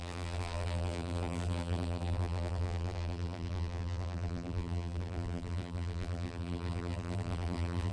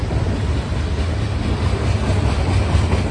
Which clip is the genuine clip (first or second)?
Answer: second